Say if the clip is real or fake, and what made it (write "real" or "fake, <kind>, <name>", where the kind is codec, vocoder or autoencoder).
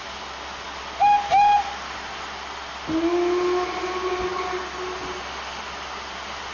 real